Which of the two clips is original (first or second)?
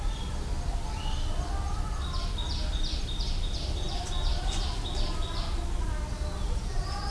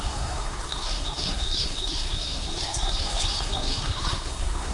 first